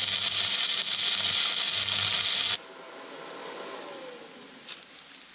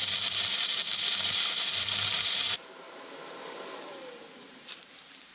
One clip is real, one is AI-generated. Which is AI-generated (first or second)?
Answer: second